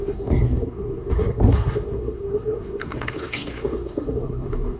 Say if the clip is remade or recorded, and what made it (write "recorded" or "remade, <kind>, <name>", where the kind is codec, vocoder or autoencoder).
remade, codec, SNAC